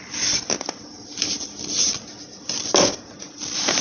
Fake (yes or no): no